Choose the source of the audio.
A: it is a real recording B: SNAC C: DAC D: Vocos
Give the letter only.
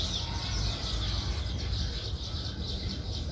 A